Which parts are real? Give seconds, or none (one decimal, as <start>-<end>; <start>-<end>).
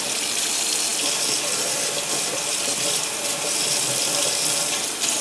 0.0-5.2